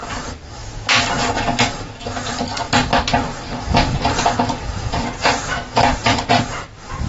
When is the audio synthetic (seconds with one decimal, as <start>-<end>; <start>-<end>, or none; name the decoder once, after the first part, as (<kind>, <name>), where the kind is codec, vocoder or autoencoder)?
none